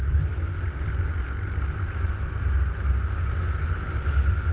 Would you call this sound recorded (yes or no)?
yes